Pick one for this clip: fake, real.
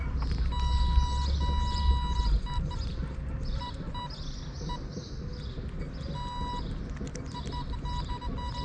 real